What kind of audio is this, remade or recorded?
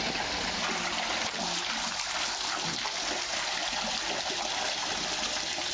recorded